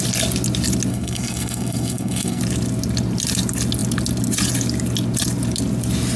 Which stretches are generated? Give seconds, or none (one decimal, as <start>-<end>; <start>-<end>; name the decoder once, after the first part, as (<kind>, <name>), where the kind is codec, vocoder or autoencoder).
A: 0.9-2.4 (codec, SNAC)